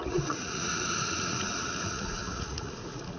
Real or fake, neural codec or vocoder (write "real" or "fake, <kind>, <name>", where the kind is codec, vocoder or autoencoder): fake, vocoder, Vocos